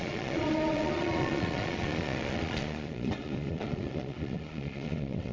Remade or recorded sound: remade